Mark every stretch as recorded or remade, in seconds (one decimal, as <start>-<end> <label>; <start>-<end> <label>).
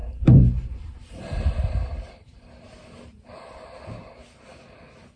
0.0-2.5 remade; 2.5-5.2 recorded